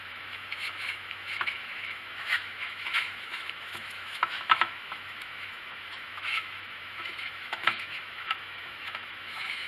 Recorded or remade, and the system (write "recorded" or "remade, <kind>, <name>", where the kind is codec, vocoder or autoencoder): remade, autoencoder, DAC-VAE